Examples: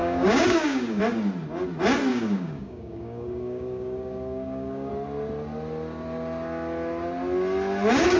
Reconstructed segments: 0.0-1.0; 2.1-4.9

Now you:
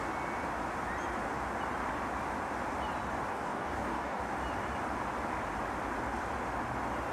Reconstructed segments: 3.3-4.2

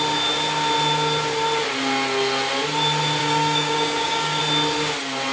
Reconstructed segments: 3.2-4.4